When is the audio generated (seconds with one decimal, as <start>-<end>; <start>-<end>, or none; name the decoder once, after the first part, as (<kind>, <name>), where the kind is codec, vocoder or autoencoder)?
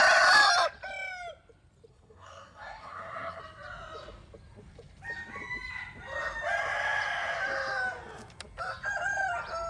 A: 1.9-3.4 (codec, SNAC)